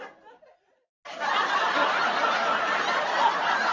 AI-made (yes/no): no